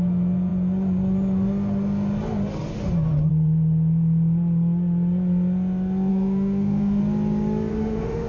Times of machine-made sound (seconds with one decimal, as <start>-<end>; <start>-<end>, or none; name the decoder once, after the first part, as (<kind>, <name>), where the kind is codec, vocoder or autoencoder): 6.1-7.0 (autoencoder, DAC-VAE); 7.7-8.3